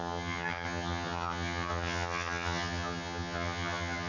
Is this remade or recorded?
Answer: remade